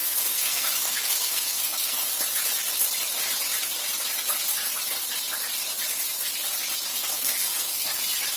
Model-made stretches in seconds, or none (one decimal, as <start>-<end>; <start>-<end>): 0.0-2.1; 6.9-8.0

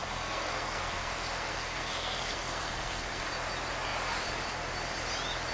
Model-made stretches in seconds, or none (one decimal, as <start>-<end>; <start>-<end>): 0.0-3.3

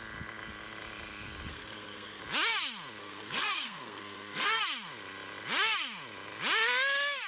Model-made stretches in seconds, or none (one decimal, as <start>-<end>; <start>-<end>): 1.5-2.2; 3.0-4.6

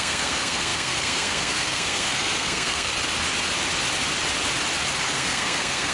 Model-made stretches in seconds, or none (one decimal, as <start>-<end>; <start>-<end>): 0.0-2.9; 5.0-5.9

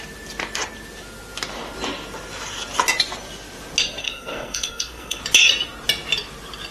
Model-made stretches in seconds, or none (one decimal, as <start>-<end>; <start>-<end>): 4.0-5.2

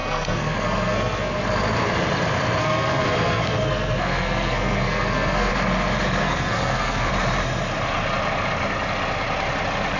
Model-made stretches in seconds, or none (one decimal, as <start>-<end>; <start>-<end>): 0.0-1.4; 2.6-5.5; 6.2-7.1

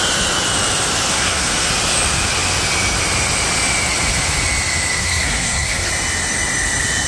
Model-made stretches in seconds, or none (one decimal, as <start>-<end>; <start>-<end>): 1.1-1.7; 5.0-5.9

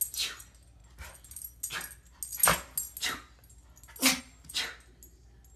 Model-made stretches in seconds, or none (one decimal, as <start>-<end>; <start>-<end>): none